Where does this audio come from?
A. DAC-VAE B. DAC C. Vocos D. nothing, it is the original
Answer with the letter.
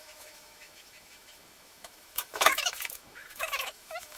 A